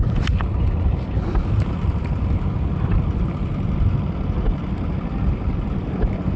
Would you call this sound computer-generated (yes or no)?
no